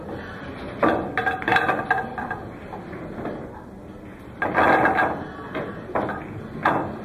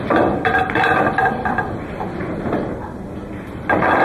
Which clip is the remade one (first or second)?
second